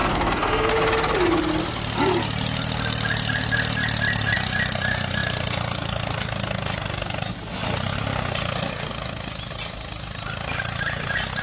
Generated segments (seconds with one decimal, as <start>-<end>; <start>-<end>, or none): 0.0-0.7